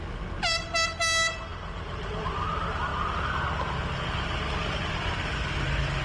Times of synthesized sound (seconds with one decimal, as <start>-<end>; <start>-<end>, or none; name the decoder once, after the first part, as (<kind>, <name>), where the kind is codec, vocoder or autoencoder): none